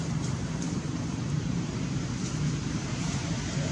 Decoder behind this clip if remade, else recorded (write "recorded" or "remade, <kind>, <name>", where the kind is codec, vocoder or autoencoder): remade, vocoder, BigVGAN v2